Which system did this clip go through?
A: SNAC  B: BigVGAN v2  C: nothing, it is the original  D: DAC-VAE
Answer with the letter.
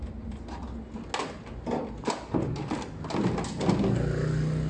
C